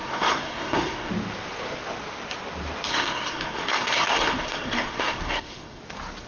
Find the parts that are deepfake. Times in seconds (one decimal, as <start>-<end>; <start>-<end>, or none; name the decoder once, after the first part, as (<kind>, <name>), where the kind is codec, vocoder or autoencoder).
0.0-1.1 (codec, SNAC); 2.9-5.8